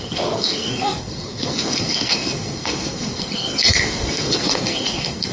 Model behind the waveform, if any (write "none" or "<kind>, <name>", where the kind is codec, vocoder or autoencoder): codec, SNAC